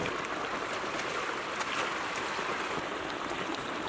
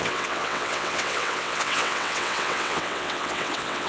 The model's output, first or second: second